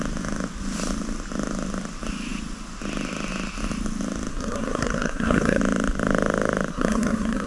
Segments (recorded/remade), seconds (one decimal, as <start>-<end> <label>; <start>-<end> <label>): 0.0-4.3 recorded; 4.3-5.6 remade; 5.6-6.7 recorded; 6.7-7.5 remade